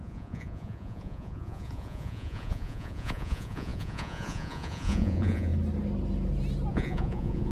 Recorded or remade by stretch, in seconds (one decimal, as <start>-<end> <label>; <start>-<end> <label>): 0.0-5.5 remade; 5.5-6.7 recorded; 6.7-7.5 remade